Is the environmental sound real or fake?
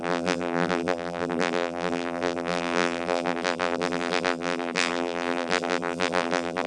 fake